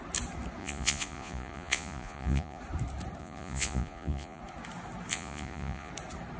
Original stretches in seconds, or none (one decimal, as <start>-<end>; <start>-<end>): 0.0-0.6; 2.6-3.2; 4.4-5.1; 5.9-6.4